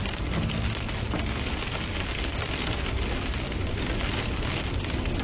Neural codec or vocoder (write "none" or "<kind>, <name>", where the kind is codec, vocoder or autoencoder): none